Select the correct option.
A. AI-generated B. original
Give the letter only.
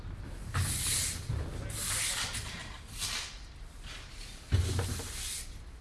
B